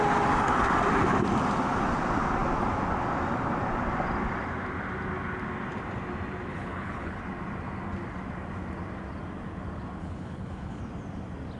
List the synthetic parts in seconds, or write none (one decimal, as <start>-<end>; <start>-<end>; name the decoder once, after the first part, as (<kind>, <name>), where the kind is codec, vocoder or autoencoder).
6.5-7.2 (codec, HILCodec); 10.0-10.8